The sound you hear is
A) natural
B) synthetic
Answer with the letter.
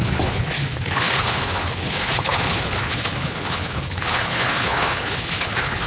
B